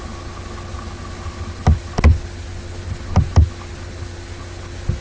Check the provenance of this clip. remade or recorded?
recorded